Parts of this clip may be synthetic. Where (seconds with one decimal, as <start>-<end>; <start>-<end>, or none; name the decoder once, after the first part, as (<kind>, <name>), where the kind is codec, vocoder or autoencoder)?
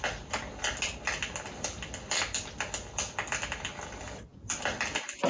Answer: 4.3-5.3 (vocoder, BigVGAN v2)